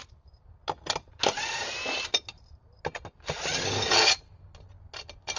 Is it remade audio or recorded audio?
recorded